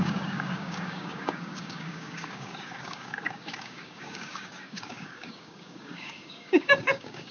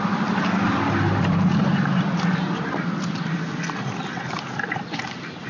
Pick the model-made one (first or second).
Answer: first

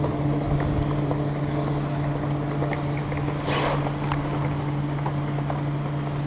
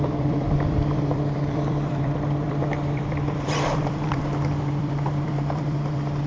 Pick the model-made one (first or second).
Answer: second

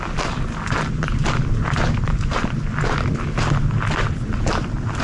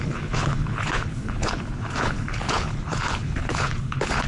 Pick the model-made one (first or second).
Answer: second